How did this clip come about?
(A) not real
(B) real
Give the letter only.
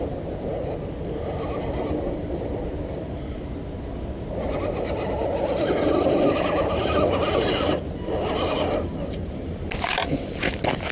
B